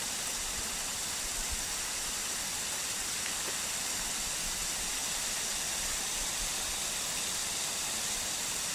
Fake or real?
real